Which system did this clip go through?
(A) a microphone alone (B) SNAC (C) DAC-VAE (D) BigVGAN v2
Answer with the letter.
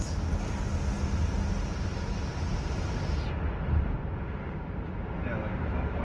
A